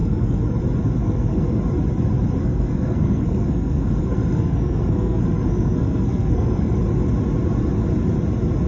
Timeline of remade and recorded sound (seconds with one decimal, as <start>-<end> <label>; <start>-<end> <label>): 0.0-0.6 remade; 0.6-1.0 recorded; 1.0-1.6 remade; 1.6-2.4 recorded; 2.4-6.8 remade; 6.8-8.7 recorded